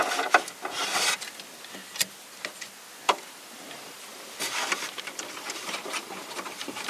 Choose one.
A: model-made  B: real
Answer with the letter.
A